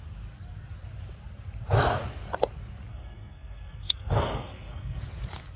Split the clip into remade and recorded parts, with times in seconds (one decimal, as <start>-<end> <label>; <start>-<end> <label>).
0.0-2.9 recorded; 2.9-5.0 remade; 5.0-5.6 recorded